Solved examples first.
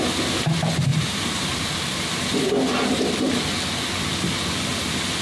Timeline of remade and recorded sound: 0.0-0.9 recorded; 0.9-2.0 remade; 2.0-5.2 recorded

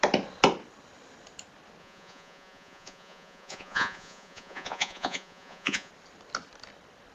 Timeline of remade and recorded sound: 0.0-1.8 recorded; 1.8-5.9 remade; 5.9-7.1 recorded

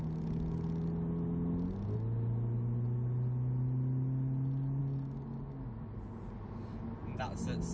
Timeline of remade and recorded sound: 0.0-7.7 recorded